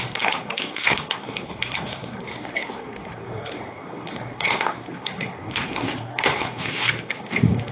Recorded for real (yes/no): no